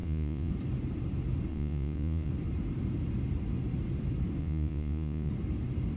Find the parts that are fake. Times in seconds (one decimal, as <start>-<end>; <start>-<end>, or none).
0.0-0.5; 1.5-2.3; 4.4-5.3